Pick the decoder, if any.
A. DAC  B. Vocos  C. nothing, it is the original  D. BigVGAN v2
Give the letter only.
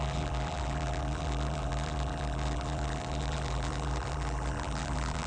D